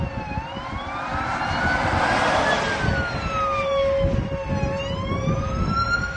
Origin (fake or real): real